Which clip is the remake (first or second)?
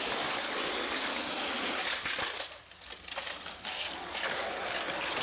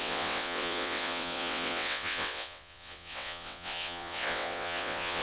second